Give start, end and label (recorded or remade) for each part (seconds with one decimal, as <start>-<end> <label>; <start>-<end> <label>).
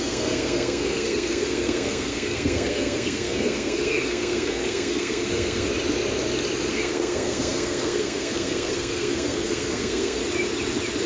0.0-5.7 remade; 5.7-6.7 recorded; 6.7-10.2 remade; 10.2-11.1 recorded